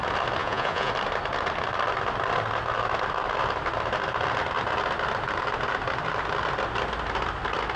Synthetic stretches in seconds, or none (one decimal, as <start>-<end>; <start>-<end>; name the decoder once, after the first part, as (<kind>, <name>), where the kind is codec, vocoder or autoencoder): 0.4-0.9 (vocoder, Vocos)